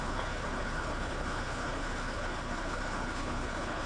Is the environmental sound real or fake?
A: fake